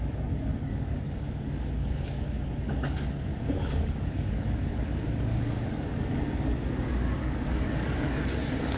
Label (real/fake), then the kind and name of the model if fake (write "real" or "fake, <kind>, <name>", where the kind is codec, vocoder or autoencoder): fake, codec, DAC